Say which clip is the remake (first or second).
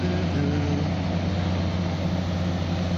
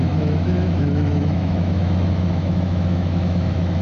second